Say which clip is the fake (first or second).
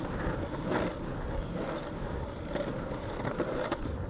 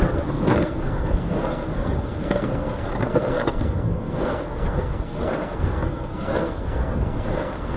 second